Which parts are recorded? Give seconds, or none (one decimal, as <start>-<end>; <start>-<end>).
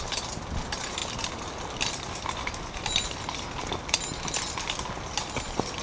0.0-5.8